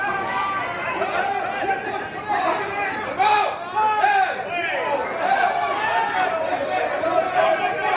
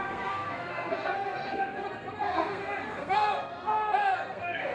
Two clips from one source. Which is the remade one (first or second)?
second